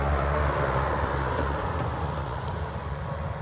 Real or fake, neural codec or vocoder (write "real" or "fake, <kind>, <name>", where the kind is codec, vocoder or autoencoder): fake, vocoder, Vocos